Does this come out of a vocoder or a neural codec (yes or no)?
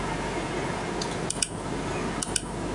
no